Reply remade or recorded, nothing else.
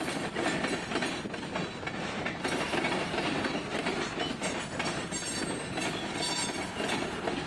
recorded